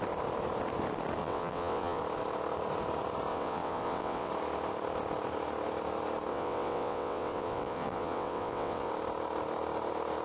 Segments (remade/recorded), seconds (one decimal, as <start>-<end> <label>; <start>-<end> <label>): 0.0-1.2 recorded; 1.2-2.0 remade; 2.0-3.3 recorded; 3.3-4.3 remade; 4.3-6.3 recorded; 6.3-8.9 remade; 8.9-10.2 recorded